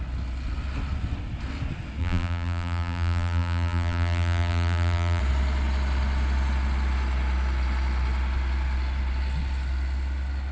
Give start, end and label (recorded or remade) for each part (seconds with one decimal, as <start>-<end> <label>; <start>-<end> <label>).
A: 0.0-2.0 recorded; 2.0-5.2 remade; 5.2-10.5 recorded